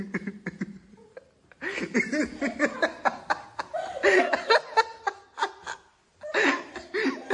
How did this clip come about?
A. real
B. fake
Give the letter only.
A